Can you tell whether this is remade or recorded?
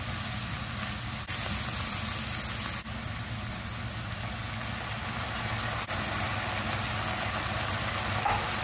recorded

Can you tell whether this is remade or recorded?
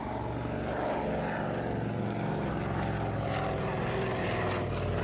recorded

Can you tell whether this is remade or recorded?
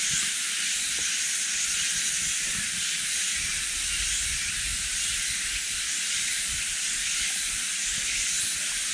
recorded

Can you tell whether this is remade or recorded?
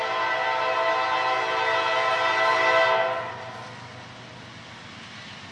recorded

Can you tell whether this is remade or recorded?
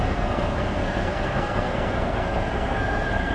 remade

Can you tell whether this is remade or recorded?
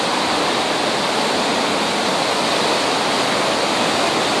recorded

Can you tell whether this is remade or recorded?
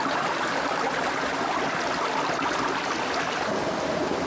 recorded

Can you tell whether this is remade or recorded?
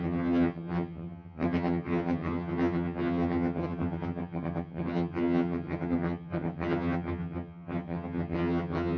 remade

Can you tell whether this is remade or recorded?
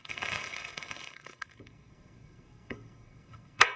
remade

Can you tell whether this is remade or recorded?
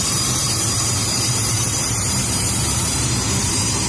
remade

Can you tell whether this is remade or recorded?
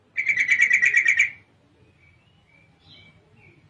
recorded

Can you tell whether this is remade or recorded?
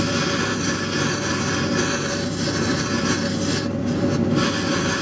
recorded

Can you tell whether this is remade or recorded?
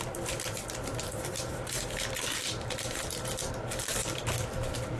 remade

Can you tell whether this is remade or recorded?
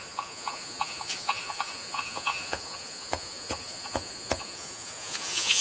remade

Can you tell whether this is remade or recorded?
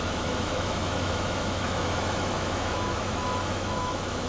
remade